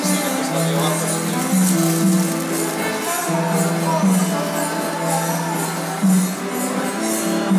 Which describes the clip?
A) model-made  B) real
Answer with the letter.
B